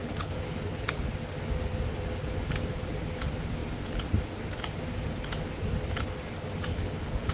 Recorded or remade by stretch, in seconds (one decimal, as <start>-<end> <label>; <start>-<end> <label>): 0.0-0.9 remade; 0.9-6.7 recorded; 6.7-7.3 remade

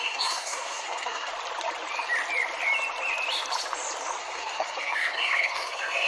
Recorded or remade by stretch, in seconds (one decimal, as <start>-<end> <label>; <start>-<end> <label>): 0.0-1.3 remade; 1.3-4.2 recorded; 4.2-6.1 remade

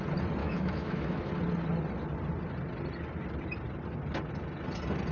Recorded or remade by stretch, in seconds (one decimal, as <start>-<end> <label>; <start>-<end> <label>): 0.0-0.4 recorded; 0.4-1.2 remade; 1.2-5.1 recorded

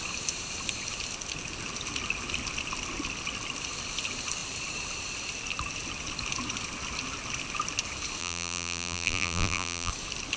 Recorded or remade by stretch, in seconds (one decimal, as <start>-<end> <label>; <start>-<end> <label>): 0.0-8.2 recorded; 8.2-9.9 remade; 9.9-10.4 recorded

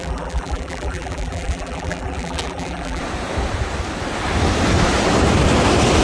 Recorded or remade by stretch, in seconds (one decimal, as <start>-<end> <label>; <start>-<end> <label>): 0.0-3.0 remade; 3.0-6.0 recorded

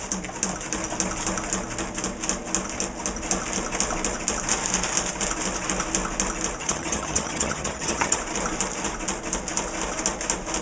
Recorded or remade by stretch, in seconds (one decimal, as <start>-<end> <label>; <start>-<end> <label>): 0.0-6.6 recorded; 6.6-8.2 remade; 8.2-10.6 recorded

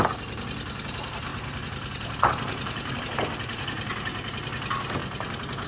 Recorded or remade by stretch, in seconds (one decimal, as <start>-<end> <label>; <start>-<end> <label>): 0.0-1.3 recorded; 1.3-3.0 remade; 3.0-5.7 recorded